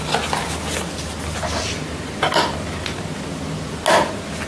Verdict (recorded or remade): recorded